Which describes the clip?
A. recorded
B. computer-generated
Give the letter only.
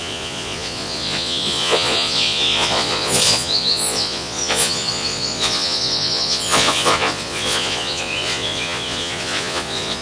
B